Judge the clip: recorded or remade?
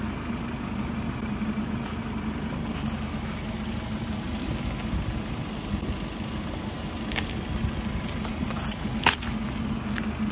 recorded